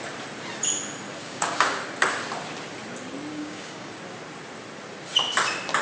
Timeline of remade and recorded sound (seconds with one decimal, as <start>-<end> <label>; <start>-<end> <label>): 0.0-1.2 recorded; 1.2-1.8 remade; 1.8-3.3 recorded; 3.3-4.0 remade; 4.0-5.8 recorded